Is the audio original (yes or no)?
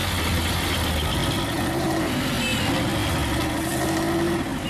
yes